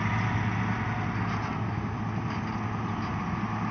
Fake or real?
real